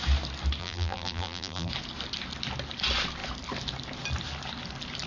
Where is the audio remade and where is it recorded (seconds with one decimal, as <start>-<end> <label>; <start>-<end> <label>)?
0.0-0.6 recorded; 0.6-1.7 remade; 1.7-5.1 recorded